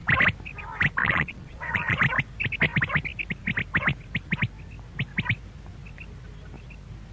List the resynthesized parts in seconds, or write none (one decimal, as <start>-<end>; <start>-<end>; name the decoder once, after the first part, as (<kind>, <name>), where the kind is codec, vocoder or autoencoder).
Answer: 1.0-2.0 (vocoder, Vocos)

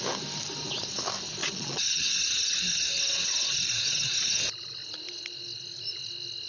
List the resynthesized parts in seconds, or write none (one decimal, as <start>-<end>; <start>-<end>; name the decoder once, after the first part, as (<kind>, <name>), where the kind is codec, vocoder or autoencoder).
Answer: 1.4-2.2 (vocoder, Vocos)

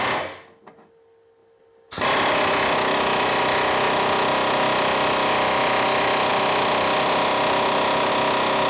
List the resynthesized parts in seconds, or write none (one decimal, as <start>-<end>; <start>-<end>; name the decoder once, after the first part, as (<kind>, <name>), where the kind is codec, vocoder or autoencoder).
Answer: none

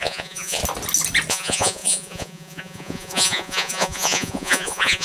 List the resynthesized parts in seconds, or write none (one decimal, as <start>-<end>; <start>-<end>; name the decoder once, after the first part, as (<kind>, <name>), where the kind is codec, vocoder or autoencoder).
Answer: 0.0-0.6 (vocoder, Vocos); 1.3-5.0